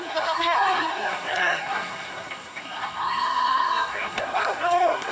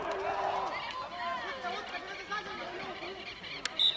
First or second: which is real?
second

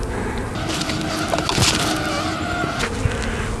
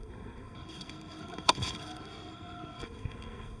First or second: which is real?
first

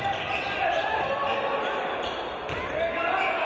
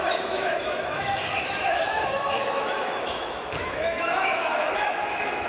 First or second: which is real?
first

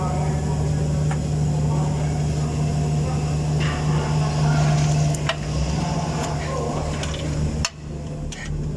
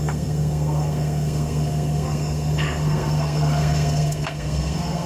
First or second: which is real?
first